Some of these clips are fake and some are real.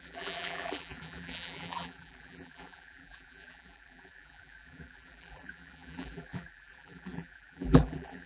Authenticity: fake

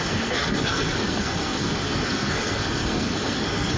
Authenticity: fake